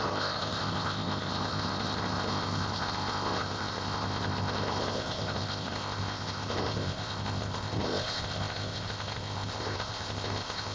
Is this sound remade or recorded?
remade